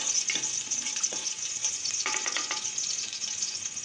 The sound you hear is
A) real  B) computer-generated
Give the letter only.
B